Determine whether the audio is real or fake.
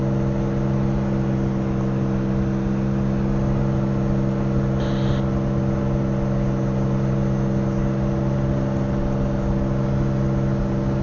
real